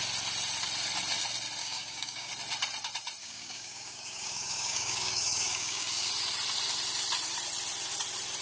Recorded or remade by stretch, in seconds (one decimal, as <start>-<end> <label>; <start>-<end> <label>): 0.0-1.6 recorded; 1.6-2.3 remade; 2.3-3.2 recorded; 3.2-6.1 remade; 6.1-8.4 recorded